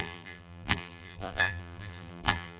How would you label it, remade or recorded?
remade